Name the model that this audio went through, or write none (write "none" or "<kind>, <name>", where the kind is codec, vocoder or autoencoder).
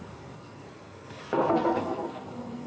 codec, SNAC